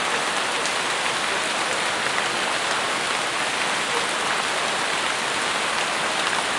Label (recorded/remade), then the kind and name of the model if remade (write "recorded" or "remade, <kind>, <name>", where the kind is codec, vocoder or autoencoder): recorded